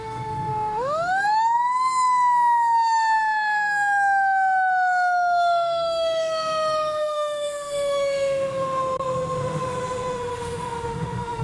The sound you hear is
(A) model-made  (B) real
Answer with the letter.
A